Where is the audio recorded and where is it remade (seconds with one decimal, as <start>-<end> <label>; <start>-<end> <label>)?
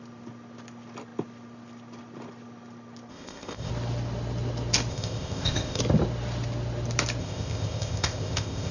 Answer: 0.0-3.1 recorded; 3.1-3.7 remade; 3.7-4.9 recorded; 4.9-5.8 remade; 5.8-7.2 recorded; 7.2-8.7 remade